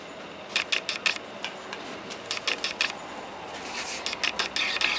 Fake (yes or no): no